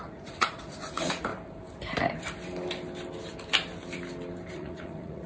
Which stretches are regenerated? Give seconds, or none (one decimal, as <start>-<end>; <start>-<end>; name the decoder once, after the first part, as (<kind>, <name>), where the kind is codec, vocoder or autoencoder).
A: 0.0-1.3 (vocoder, Vocos); 4.5-5.3